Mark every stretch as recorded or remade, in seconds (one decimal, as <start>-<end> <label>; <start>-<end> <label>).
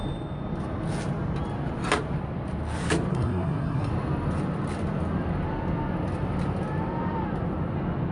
0.0-3.1 recorded; 3.1-3.9 remade; 3.9-8.1 recorded